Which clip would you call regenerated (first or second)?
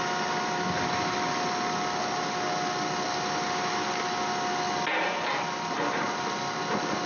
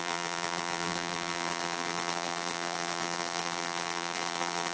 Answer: second